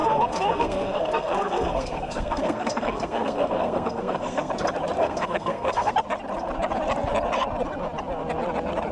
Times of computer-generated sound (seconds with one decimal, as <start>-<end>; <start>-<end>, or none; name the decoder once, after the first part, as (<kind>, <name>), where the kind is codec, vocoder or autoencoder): 0.0-4.5 (codec, SNAC); 5.0-5.9